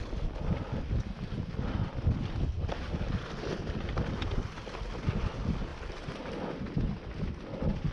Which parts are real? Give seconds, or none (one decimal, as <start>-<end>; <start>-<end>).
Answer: 0.0-5.7; 6.3-7.9